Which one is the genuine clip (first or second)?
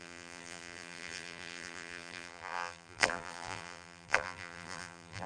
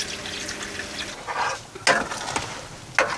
second